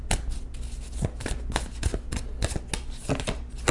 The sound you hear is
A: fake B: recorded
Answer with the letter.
B